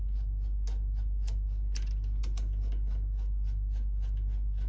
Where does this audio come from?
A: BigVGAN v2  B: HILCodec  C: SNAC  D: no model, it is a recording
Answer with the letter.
D